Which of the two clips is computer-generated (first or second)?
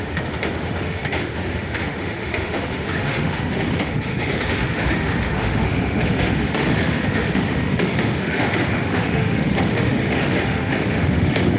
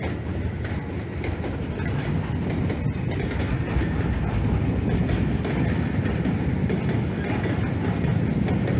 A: first